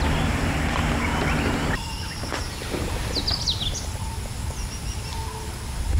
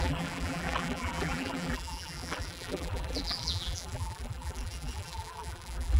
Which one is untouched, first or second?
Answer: first